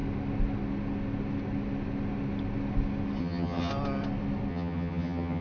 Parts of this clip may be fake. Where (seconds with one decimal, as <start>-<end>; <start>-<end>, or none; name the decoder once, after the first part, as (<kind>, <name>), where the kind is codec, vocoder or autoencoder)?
3.2-3.7 (vocoder, HiFi-GAN); 4.5-5.4

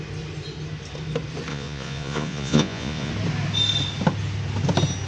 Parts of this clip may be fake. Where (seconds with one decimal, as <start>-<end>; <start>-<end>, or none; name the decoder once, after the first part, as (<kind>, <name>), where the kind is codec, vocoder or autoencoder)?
1.5-3.1 (vocoder, Vocos)